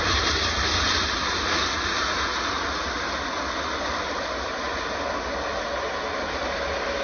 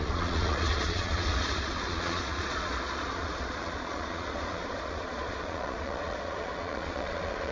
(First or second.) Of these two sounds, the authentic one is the first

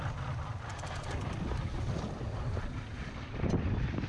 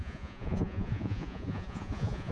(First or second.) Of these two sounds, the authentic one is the first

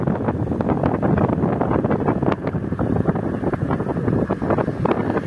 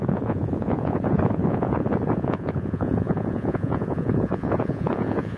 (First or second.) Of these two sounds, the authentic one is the first